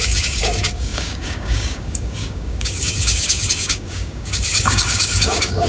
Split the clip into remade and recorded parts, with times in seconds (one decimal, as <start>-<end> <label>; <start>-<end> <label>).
0.0-5.7 remade